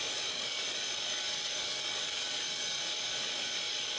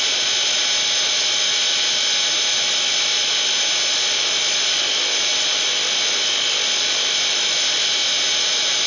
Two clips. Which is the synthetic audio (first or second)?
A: first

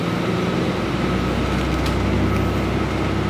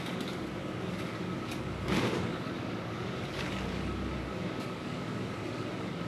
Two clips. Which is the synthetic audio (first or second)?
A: second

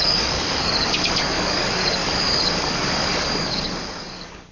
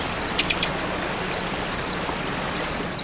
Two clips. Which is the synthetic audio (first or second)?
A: first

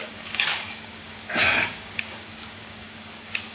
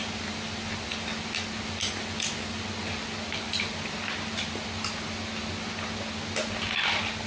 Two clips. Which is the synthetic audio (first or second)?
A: first